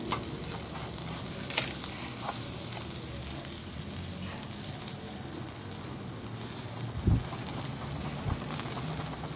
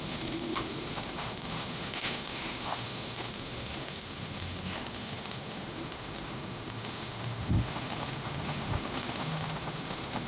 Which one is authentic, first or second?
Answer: first